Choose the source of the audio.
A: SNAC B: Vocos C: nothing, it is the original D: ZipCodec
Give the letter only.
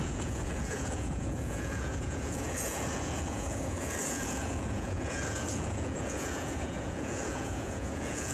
B